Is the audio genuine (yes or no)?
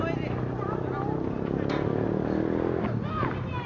yes